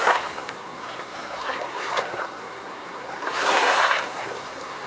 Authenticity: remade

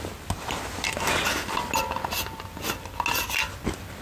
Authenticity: recorded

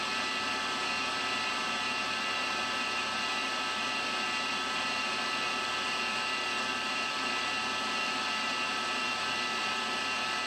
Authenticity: recorded